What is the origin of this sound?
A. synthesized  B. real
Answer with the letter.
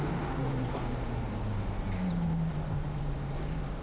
A